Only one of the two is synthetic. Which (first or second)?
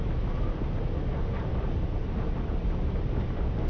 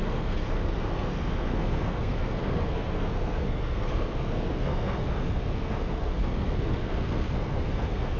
second